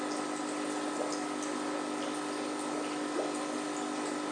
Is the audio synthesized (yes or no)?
no